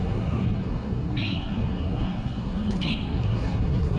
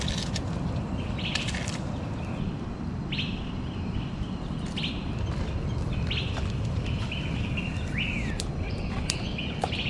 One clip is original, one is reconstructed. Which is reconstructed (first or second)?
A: first